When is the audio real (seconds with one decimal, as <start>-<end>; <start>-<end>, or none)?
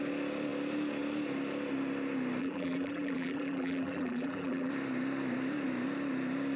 0.0-2.4; 4.7-6.6